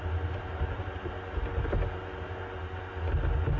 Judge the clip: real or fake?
real